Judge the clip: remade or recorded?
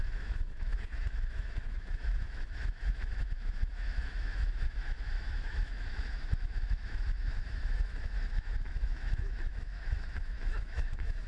remade